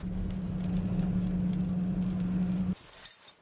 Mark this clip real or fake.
real